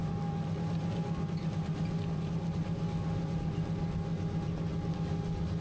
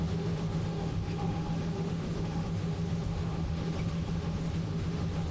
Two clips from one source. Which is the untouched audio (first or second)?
first